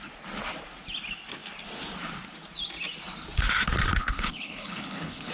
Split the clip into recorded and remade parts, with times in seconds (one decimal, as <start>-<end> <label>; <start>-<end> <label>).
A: 0.0-4.0 recorded; 4.0-5.3 remade